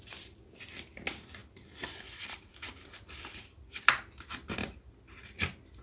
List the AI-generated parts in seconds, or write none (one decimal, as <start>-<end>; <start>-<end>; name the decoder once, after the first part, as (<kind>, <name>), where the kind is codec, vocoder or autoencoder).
1.4-4.9 (vocoder, BigVGAN v2)